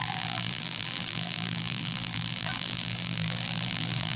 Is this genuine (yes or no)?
no